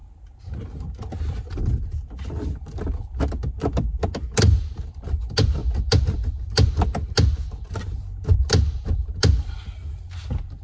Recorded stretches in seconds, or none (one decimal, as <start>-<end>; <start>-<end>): 0.0-10.6